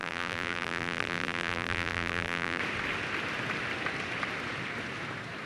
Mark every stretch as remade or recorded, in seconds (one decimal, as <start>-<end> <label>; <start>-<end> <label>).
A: 0.0-2.6 remade; 2.6-5.5 recorded